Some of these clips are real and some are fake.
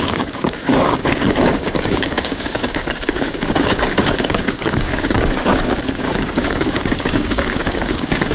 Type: fake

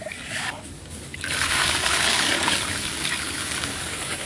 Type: fake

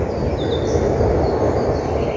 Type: real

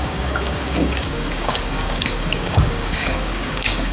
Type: fake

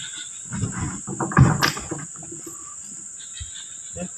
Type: real